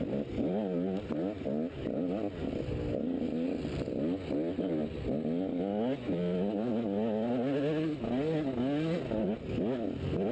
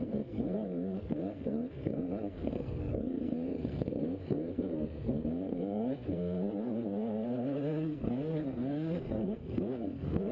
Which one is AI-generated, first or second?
second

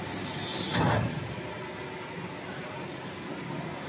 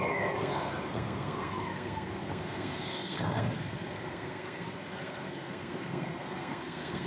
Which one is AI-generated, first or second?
second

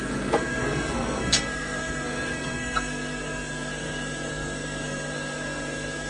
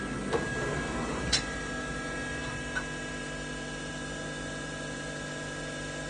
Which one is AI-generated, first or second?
first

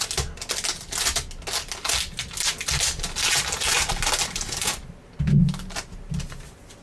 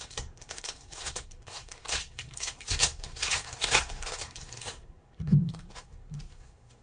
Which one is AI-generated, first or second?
second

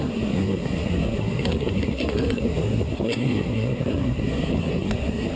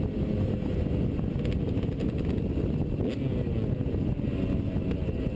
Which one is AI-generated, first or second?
first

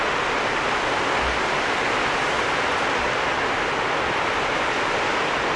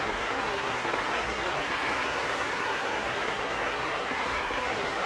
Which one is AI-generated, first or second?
second